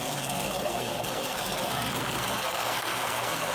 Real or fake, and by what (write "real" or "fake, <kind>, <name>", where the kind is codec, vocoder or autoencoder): fake, codec, SNAC